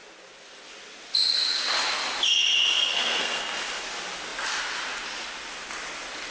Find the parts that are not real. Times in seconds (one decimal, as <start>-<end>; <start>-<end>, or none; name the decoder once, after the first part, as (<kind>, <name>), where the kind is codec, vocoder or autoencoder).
2.9-3.4 (codec, SNAC)